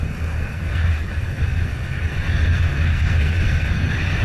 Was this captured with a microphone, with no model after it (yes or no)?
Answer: no